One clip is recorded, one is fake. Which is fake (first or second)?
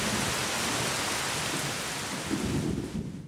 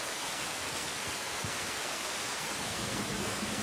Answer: second